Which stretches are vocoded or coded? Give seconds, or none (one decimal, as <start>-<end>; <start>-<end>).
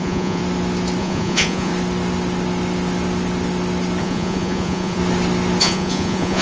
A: 0.0-0.4; 1.0-1.7; 4.0-5.0; 5.6-6.4